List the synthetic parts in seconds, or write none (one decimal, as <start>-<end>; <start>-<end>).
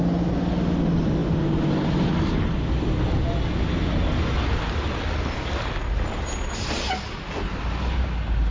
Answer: none